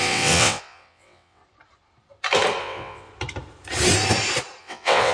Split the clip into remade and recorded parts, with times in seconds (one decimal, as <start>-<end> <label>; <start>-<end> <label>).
0.0-1.4 remade; 1.4-2.6 recorded; 2.6-3.1 remade; 3.1-4.6 recorded; 4.6-5.1 remade